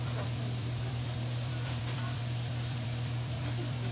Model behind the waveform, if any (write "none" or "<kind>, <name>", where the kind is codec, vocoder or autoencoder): vocoder, BigVGAN v2